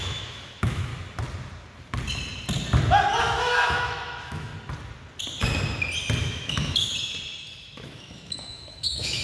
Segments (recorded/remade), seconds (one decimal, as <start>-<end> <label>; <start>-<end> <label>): 0.0-0.9 remade; 0.9-3.2 recorded; 3.2-4.5 remade; 4.5-6.2 recorded; 6.2-6.9 remade; 6.9-7.6 recorded; 7.6-9.2 remade